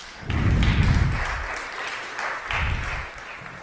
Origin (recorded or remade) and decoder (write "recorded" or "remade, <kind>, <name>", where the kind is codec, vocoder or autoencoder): recorded